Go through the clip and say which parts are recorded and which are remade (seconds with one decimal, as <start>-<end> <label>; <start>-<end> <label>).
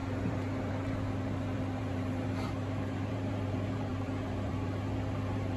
0.0-5.6 remade